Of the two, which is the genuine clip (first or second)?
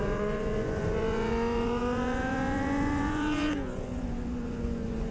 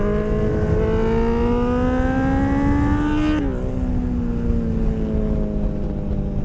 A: second